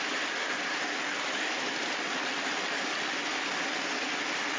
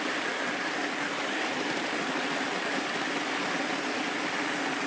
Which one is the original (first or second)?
first